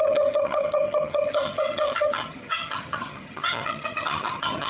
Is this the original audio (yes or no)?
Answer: no